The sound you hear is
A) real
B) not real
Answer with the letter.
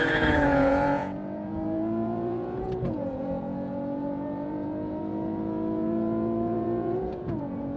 B